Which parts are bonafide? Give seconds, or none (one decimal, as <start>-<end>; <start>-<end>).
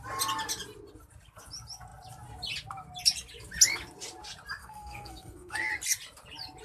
0.0-4.6; 5.7-6.6